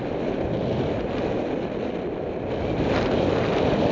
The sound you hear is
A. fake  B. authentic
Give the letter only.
B